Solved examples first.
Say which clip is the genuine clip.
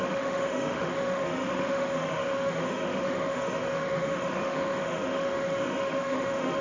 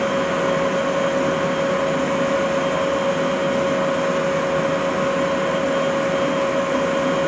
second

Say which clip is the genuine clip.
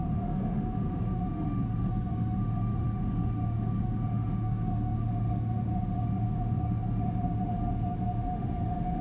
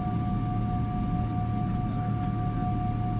second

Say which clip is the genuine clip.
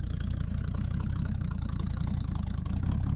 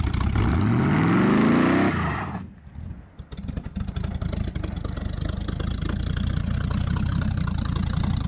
second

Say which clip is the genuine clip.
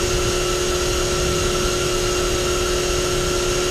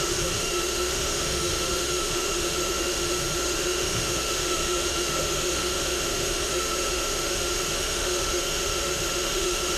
first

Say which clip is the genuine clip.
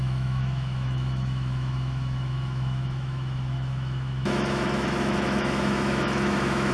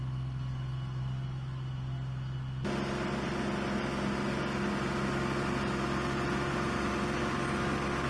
second